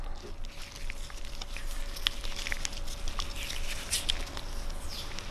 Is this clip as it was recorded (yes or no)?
yes